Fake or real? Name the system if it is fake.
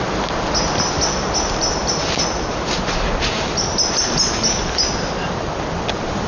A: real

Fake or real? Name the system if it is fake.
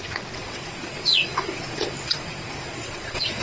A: fake, vocoder, WaveNeXt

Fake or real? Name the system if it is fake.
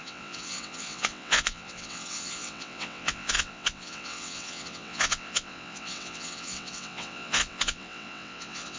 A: fake, vocoder, WaveNeXt